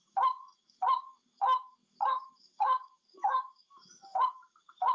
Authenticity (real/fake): fake